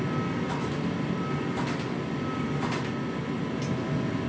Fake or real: real